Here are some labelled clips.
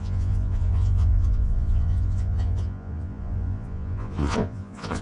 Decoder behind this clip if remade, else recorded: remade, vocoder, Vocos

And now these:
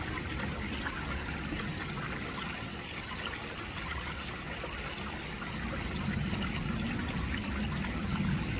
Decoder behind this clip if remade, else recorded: recorded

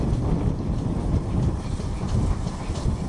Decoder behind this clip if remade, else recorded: recorded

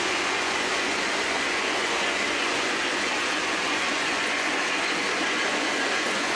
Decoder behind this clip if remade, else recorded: remade, vocoder, Vocos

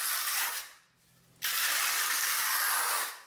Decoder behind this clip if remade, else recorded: recorded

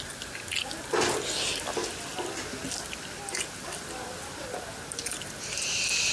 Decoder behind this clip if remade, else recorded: recorded